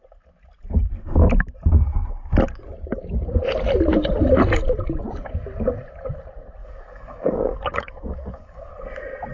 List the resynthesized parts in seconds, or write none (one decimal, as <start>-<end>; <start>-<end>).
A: 6.6-8.7